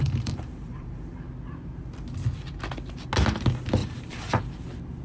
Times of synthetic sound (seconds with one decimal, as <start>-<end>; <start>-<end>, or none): 0.0-1.3; 3.8-4.4